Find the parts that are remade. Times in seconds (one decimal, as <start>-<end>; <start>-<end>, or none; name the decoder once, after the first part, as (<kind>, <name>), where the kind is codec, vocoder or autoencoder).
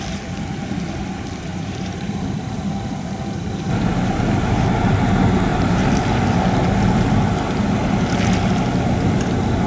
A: 1.5-2.5 (vocoder, BigVGAN v2); 5.5-6.0